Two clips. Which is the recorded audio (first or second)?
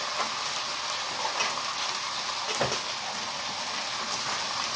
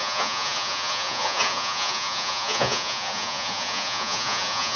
first